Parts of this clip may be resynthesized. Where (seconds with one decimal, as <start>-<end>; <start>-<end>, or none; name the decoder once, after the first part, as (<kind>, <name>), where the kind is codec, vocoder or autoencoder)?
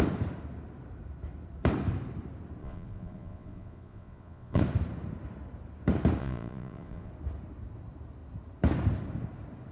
2.6-4.6 (vocoder, Vocos); 6.2-7.1